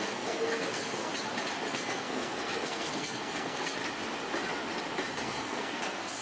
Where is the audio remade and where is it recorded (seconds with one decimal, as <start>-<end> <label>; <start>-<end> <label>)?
0.0-1.1 remade; 1.1-1.7 recorded; 1.7-3.8 remade; 3.8-5.1 recorded; 5.1-6.2 remade